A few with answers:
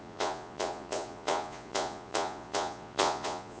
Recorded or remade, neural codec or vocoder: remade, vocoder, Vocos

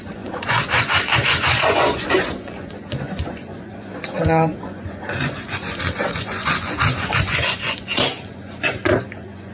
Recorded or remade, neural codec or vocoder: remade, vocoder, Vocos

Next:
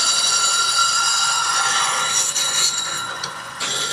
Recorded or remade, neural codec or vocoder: remade, vocoder, Vocos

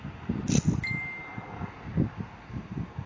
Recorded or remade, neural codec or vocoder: recorded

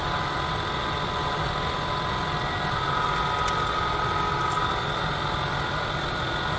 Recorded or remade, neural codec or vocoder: recorded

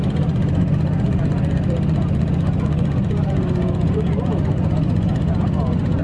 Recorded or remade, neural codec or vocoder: remade, vocoder, Vocos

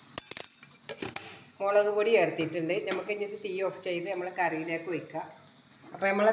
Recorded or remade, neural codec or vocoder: recorded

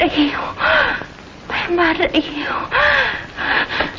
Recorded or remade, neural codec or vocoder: recorded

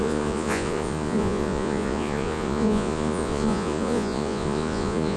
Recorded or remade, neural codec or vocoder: remade, vocoder, Vocos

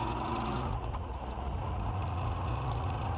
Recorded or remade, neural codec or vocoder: remade, vocoder, Vocos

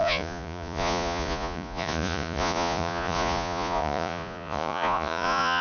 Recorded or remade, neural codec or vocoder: remade, vocoder, Vocos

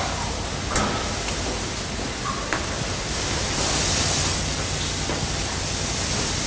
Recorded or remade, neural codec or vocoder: recorded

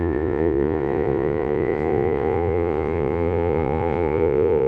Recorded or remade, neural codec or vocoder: remade, vocoder, Vocos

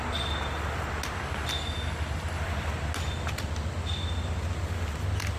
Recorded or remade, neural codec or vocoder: recorded